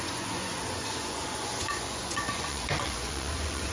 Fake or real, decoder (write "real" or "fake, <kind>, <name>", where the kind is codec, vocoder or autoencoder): fake, vocoder, Vocos